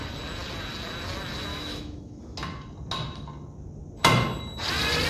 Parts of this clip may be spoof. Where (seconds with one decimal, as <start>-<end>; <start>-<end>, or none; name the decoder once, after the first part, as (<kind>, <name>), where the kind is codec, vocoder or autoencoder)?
1.5-2.2 (autoencoder, DAC-VAE)